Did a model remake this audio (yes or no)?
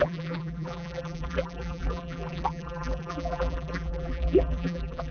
yes